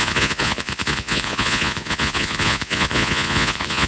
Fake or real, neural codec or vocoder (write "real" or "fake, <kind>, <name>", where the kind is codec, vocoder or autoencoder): fake, vocoder, Vocos